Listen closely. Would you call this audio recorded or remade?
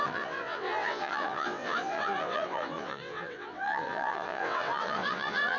remade